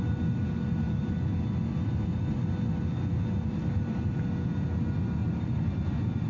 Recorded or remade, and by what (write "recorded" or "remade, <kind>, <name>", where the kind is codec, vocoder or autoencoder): recorded